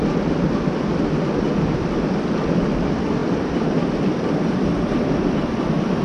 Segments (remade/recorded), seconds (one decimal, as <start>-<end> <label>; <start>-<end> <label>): 0.0-3.2 recorded; 3.2-4.7 remade; 4.7-6.0 recorded